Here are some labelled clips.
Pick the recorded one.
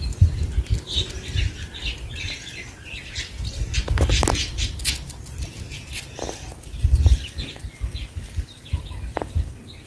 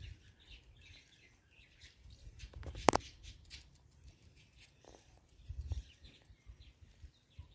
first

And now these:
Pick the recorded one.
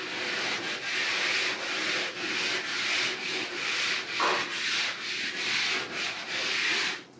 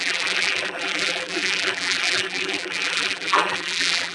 first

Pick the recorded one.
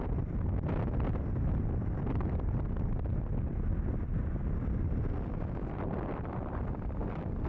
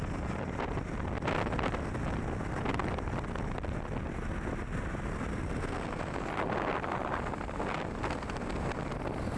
second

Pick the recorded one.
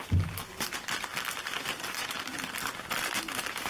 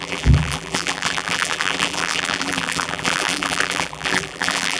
first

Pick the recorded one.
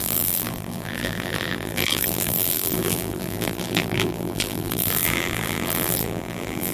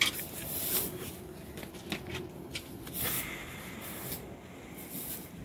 second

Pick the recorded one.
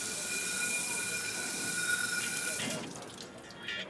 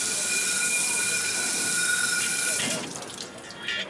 first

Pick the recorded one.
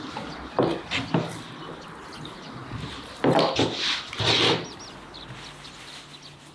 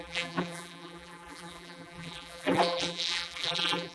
first